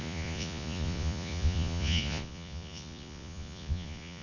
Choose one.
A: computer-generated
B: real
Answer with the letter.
A